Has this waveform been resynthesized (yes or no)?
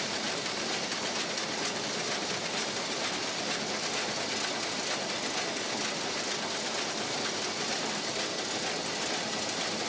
no